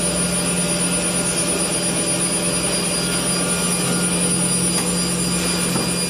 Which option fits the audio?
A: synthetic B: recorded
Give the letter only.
B